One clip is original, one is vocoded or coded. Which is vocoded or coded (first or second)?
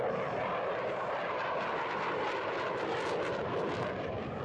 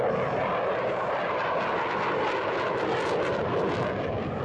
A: first